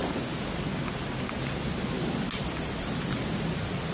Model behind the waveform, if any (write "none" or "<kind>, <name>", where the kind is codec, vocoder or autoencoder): none